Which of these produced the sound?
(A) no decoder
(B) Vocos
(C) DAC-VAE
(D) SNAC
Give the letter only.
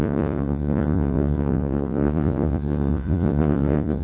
B